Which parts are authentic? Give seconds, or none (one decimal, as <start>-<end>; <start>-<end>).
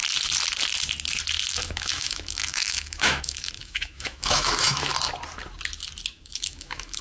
0.0-1.5; 4.9-6.1